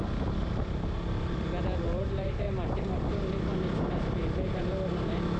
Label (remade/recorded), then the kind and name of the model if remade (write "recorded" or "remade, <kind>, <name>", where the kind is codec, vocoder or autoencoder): recorded